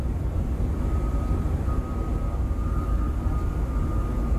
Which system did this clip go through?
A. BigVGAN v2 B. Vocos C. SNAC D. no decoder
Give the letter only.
D